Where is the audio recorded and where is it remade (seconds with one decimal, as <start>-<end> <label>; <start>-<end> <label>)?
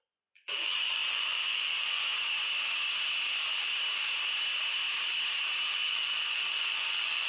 0.0-2.1 remade; 2.1-5.7 recorded; 5.7-7.3 remade